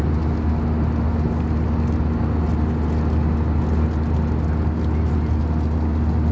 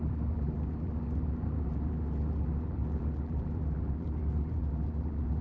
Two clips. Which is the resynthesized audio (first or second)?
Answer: second